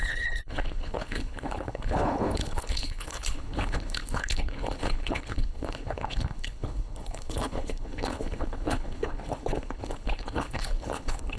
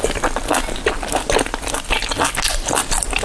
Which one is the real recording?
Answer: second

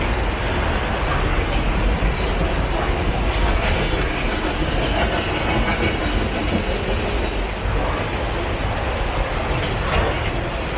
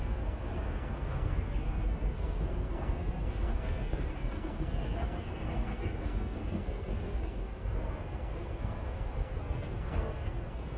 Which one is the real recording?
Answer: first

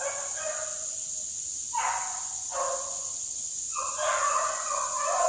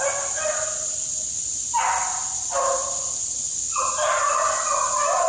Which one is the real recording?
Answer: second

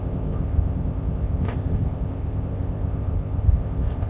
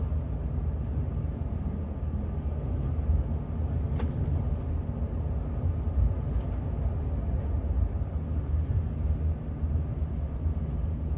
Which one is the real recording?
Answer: second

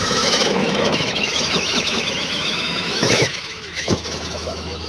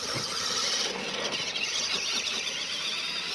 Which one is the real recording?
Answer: second